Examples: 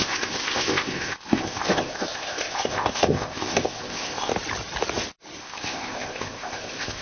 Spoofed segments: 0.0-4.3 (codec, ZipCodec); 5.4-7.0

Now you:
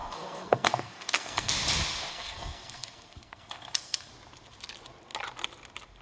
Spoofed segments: 0.0-1.5 (codec, SNAC); 2.1-4.1

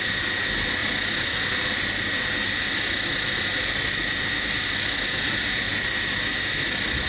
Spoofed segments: none

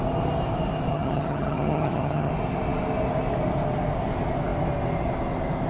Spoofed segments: 0.9-2.3 (vocoder, HiFi-GAN)